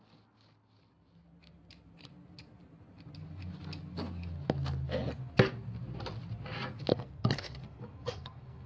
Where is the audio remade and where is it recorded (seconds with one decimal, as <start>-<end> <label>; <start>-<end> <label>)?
0.0-6.9 recorded; 6.9-8.7 remade